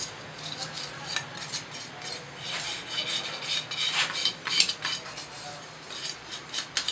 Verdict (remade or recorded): recorded